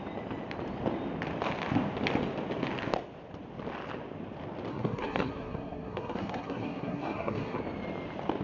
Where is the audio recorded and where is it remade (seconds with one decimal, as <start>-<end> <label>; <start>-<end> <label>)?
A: 0.0-4.7 recorded; 4.7-7.6 remade; 7.6-8.4 recorded

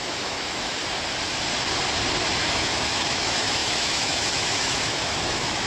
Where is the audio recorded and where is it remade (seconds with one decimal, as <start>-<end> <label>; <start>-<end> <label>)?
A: 0.0-0.8 remade; 0.8-2.5 recorded; 2.5-5.7 remade